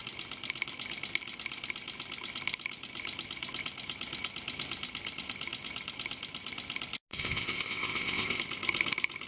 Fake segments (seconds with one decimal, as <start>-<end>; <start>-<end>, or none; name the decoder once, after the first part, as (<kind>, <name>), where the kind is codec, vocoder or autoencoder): 7.1-8.4 (codec, ZipCodec)